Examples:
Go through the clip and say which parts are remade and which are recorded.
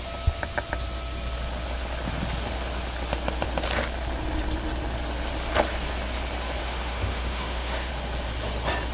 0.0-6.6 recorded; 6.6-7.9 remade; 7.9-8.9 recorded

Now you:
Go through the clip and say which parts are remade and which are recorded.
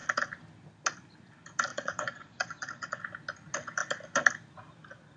0.0-1.7 recorded; 1.7-3.0 remade; 3.0-5.2 recorded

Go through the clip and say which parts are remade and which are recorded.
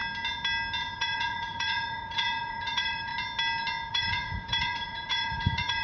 0.0-1.0 recorded; 1.0-3.1 remade; 3.1-3.9 recorded; 3.9-5.8 remade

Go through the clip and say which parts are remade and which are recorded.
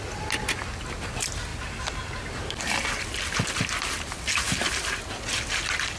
0.0-6.0 recorded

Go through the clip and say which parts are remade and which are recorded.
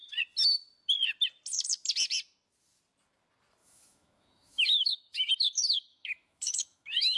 0.0-3.6 recorded; 3.6-5.3 remade; 5.3-5.9 recorded; 5.9-7.2 remade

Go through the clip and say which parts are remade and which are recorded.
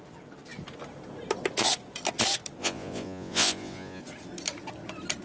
0.0-2.6 recorded; 2.6-4.0 remade; 4.0-5.2 recorded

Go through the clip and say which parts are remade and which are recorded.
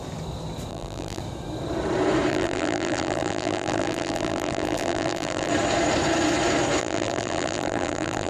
0.0-0.7 recorded; 0.7-1.2 remade; 1.2-2.3 recorded; 2.3-5.5 remade; 5.5-6.8 recorded; 6.8-8.3 remade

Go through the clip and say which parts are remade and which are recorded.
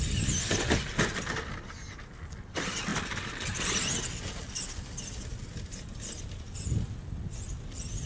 0.0-8.1 recorded